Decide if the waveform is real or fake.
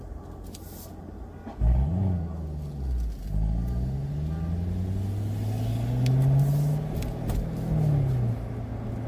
real